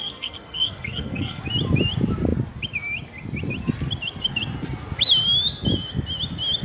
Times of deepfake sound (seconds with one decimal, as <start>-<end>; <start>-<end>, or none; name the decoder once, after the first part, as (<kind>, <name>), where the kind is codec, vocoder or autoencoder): 0.0-1.4 (codec, SNAC)